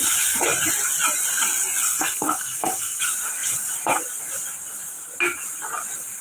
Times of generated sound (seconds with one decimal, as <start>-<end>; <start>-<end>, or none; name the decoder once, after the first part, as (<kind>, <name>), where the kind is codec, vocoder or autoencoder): 1.9-3.0 (codec, SNAC)